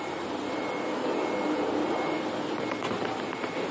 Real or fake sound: real